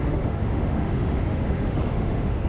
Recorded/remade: remade